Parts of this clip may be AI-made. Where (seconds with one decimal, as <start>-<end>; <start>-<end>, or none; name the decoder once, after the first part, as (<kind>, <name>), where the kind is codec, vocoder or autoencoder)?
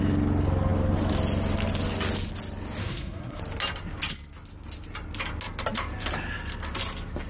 2.8-3.4 (codec, SNAC)